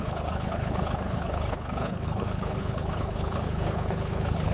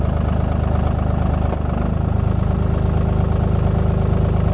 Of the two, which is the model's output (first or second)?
first